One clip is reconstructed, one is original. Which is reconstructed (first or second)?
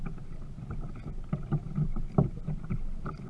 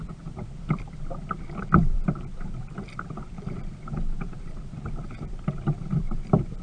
second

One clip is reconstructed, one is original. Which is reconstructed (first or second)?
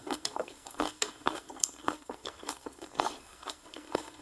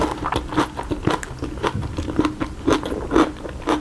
first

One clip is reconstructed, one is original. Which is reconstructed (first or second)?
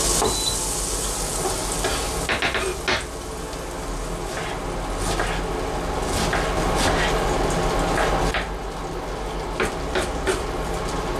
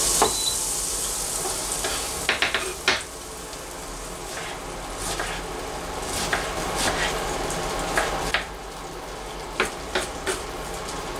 second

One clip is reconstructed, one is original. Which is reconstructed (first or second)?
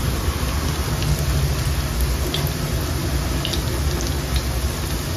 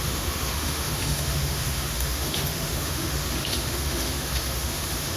second